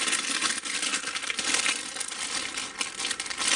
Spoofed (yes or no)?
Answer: no